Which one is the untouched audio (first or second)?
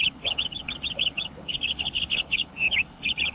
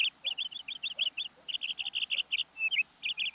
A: second